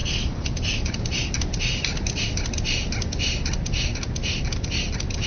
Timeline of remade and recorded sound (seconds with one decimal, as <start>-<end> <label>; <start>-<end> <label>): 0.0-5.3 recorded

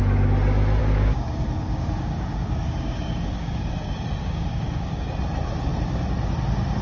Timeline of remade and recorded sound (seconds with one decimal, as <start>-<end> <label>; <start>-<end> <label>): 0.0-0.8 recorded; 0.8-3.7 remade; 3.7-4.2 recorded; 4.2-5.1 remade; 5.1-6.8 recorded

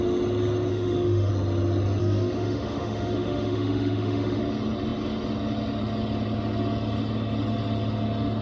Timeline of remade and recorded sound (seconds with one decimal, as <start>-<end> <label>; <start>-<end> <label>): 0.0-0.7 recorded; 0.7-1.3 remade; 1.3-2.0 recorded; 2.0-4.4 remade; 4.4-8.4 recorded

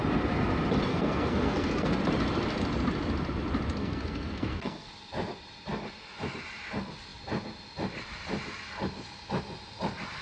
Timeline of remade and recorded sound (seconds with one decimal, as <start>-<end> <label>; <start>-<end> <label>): 0.0-0.9 recorded; 0.9-2.0 remade; 2.0-3.8 recorded; 3.8-4.9 remade; 4.9-10.2 recorded

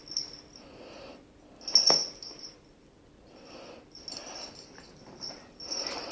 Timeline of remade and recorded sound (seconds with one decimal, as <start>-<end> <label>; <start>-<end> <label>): 0.0-6.1 recorded

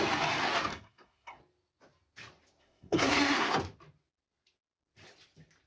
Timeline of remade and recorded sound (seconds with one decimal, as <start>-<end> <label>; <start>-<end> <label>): 0.0-0.7 recorded; 0.7-1.4 remade; 1.4-2.6 recorded; 2.6-3.6 remade; 3.6-5.7 recorded